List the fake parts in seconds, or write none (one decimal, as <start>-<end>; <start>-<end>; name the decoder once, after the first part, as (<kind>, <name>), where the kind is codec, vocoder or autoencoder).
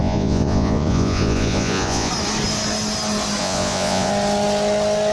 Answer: 0.0-2.1 (vocoder, Vocos); 3.4-4.1